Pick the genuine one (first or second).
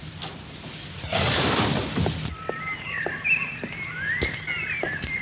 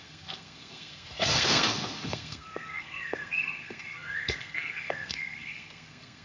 first